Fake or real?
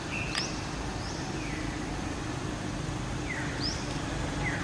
real